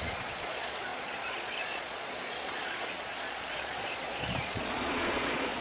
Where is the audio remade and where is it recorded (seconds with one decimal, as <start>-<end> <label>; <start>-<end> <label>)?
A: 0.0-5.6 remade